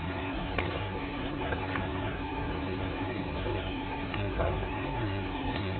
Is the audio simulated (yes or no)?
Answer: yes